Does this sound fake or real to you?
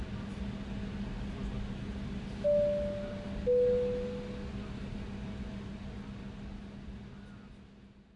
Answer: real